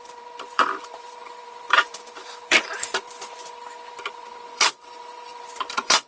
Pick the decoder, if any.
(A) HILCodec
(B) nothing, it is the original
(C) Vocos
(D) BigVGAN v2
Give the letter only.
D